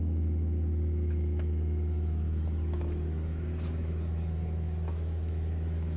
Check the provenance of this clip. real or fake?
fake